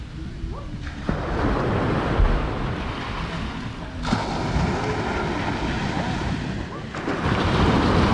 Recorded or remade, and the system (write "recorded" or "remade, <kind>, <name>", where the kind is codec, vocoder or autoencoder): recorded